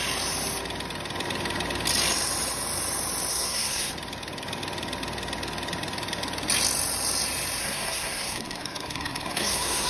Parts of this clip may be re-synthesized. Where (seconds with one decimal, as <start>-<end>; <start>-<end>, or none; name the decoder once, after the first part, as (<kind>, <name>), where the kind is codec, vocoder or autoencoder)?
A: 3.3-3.9 (codec, SNAC); 7.6-9.9